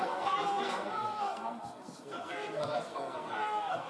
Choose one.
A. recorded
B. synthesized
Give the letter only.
B